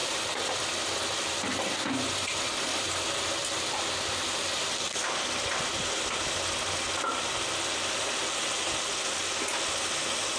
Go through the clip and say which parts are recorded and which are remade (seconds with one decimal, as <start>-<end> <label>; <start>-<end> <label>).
0.0-10.4 recorded